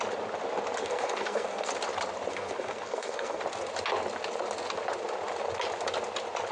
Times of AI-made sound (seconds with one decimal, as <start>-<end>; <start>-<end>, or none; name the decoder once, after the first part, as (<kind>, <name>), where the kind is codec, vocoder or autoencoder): 0.8-1.7 (codec, SNAC); 2.3-3.4